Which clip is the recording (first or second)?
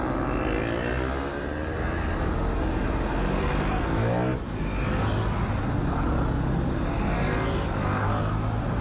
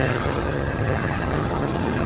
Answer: first